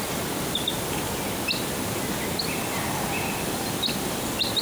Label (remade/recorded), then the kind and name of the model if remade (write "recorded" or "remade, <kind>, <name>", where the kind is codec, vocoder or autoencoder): recorded